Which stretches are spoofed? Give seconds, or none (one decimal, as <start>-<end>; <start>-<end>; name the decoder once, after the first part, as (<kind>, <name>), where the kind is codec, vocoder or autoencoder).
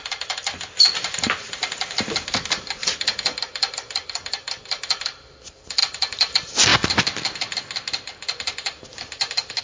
0.0-6.7 (vocoder, BigVGAN v2)